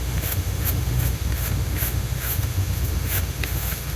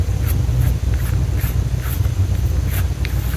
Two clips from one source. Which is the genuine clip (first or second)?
second